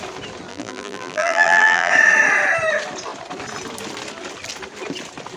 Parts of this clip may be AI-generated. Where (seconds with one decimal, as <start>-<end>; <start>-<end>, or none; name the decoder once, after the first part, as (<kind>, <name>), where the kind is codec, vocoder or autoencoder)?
0.5-1.9 (vocoder, BigVGAN v2)